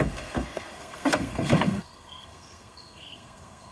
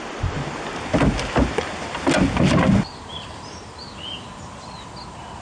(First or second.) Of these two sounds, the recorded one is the second